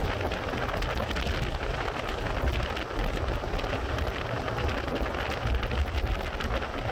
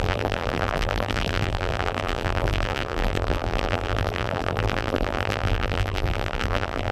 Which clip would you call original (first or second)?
first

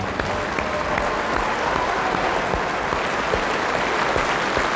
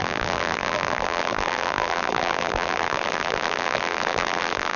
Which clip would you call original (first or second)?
first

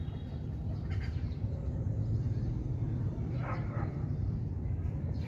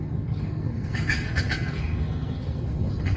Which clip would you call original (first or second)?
first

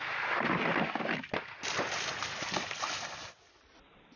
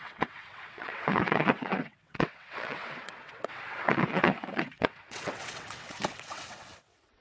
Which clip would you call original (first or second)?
first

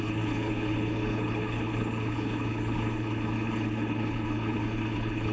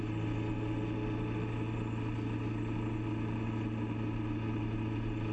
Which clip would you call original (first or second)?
second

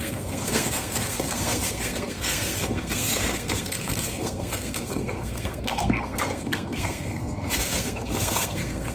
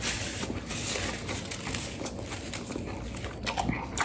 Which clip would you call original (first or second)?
second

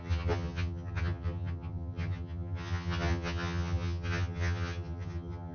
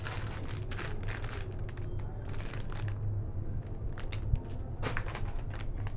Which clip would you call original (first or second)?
second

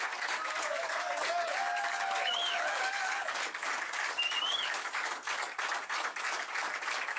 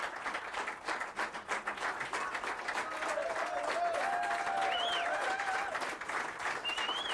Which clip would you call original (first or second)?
second